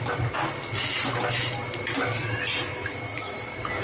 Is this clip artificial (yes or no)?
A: no